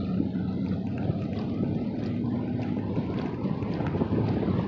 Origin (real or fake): real